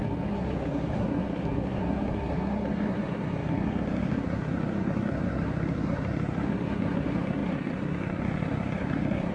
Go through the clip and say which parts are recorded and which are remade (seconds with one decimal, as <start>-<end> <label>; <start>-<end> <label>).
0.0-9.3 remade